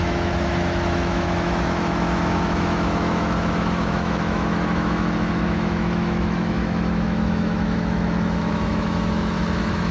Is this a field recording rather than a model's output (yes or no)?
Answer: no